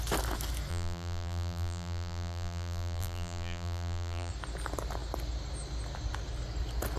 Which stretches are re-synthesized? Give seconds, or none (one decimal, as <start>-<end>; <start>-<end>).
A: 0.7-4.3